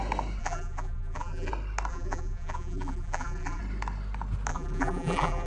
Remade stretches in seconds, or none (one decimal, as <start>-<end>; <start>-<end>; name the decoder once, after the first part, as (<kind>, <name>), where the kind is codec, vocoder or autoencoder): 0.4-1.5 (vocoder, BigVGAN v2); 1.9-3.6; 4.5-5.5